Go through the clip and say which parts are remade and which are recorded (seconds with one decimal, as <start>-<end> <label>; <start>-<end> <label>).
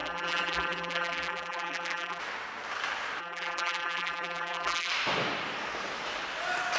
0.0-2.2 remade; 2.2-3.2 recorded; 3.2-4.9 remade; 4.9-6.8 recorded